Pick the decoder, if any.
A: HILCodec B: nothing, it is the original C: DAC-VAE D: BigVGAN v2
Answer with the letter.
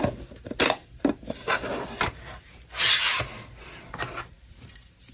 B